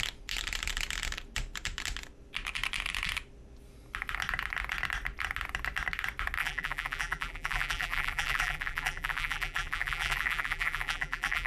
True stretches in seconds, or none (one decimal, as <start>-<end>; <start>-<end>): 0.0-6.4